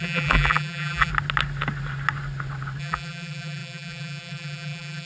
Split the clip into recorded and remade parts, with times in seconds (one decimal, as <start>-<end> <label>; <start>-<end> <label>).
0.0-1.1 remade; 1.1-2.8 recorded; 2.8-5.1 remade